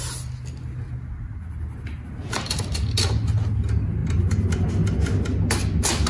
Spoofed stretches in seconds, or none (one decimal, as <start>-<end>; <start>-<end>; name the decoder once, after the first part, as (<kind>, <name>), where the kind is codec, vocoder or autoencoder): none

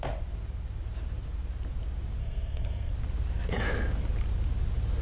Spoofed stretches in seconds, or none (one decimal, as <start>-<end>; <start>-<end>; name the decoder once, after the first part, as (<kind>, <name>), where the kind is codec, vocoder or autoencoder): 2.2-2.9 (codec, SNAC)

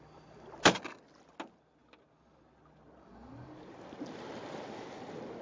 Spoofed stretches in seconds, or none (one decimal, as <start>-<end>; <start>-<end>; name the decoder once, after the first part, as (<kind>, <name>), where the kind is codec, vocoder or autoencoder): none

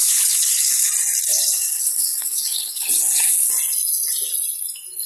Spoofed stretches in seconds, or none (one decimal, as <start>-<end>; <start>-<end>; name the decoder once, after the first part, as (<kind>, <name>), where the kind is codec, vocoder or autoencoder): 0.0-0.9 (codec, HILCodec); 1.3-3.5

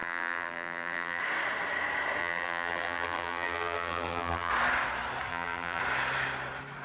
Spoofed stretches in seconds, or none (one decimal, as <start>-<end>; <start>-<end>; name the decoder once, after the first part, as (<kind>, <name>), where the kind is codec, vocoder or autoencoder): 0.0-1.2 (vocoder, BigVGAN v2); 2.2-4.5; 5.3-5.8

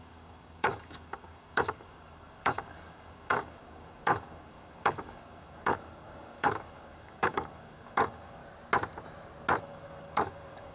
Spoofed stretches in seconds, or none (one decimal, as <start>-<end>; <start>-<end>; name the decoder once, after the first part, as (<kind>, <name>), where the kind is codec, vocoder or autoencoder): 0.0-8.4 (codec, DAC); 9.6-10.7